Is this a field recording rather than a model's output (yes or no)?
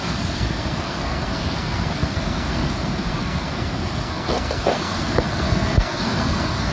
no